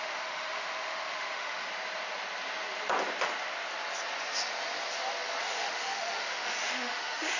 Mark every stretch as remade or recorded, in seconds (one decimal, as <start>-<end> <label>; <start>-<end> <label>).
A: 0.0-1.7 remade; 1.7-5.4 recorded; 5.4-7.4 remade